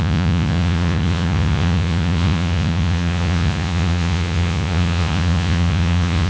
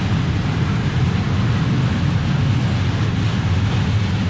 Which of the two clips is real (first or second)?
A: second